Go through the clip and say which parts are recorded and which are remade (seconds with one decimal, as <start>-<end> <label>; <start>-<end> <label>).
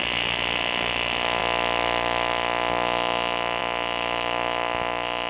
0.0-5.3 recorded